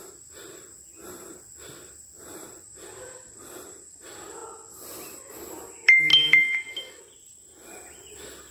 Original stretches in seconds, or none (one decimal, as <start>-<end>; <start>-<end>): 0.0-6.1; 7.0-8.5